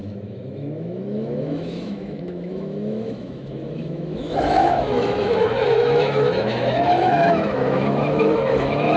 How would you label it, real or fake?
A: fake